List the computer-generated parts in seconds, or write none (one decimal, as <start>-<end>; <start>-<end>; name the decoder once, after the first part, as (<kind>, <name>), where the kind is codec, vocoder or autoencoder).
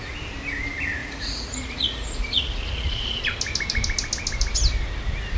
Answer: 1.0-3.2 (vocoder, Vocos)